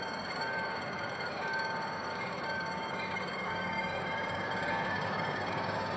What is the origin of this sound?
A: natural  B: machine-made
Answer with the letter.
B